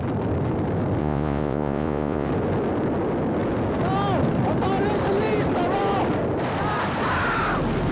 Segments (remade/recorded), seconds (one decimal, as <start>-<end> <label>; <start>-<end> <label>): 0.0-1.0 recorded; 1.0-2.3 remade; 2.3-7.9 recorded